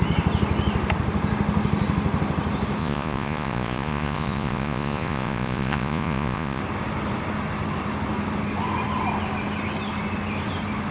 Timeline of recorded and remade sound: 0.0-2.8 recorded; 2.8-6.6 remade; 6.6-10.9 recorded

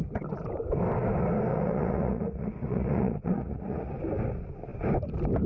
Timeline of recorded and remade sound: 0.0-1.5 recorded; 1.5-3.9 remade; 3.9-5.5 recorded

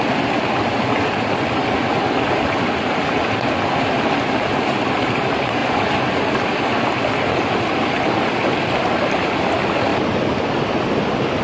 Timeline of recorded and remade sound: 0.0-11.4 recorded